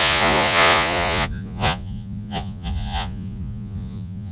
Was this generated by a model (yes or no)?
yes